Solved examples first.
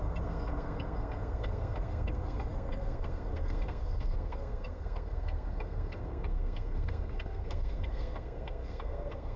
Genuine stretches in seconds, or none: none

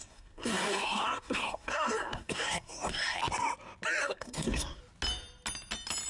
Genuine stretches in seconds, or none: 3.2-4.0; 4.8-6.1

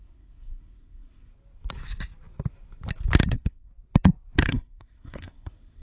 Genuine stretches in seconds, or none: 1.3-3.3; 3.7-4.4

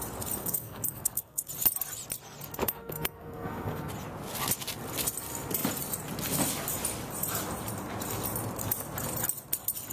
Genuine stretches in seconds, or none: 0.0-0.4; 1.5-2.6; 3.9-9.9

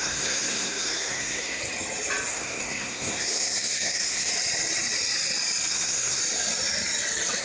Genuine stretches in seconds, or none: 1.6-2.3; 4.3-5.7; 6.2-7.4

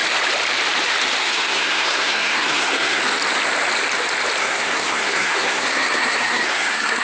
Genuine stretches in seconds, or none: 0.0-1.2; 3.0-4.4

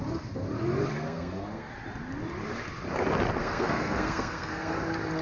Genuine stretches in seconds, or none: 0.0-0.9; 1.7-3.4; 4.7-5.2